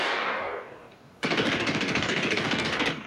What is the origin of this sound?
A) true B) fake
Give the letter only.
B